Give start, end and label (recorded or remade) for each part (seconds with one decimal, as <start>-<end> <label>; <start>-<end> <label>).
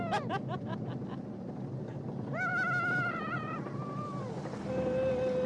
0.0-5.5 recorded